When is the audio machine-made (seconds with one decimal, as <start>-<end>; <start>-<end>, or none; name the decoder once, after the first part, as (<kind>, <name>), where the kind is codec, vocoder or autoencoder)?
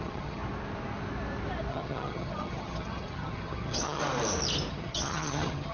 0.0-0.4 (vocoder, HiFi-GAN); 1.7-4.0; 4.7-5.7